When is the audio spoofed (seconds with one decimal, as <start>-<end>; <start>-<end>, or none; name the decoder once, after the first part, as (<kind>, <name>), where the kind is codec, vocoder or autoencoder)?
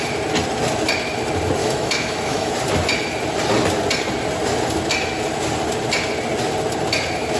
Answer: 1.6-2.5 (autoencoder, DAC-VAE)